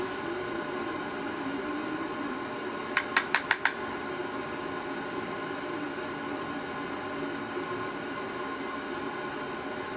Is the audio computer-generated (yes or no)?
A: no